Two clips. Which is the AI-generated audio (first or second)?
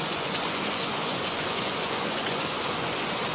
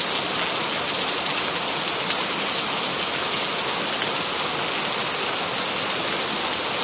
first